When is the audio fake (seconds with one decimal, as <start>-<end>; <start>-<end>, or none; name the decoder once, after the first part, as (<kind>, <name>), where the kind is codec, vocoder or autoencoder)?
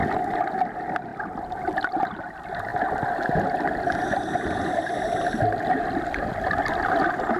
none